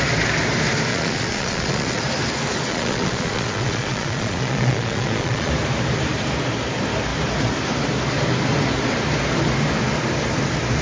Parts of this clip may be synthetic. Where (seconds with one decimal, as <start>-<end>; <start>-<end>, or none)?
0.9-2.0; 2.7-5.5